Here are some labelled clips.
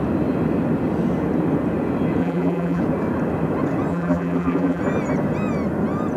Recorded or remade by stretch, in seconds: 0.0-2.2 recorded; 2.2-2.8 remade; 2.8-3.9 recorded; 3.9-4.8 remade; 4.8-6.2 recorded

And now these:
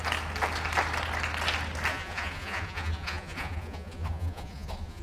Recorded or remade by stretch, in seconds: 0.0-1.9 recorded; 1.9-5.0 remade

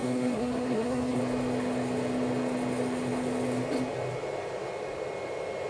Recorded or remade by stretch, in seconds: 0.0-1.2 remade; 1.2-5.7 recorded

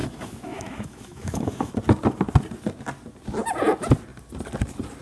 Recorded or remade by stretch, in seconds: 0.0-1.7 remade; 1.7-5.0 recorded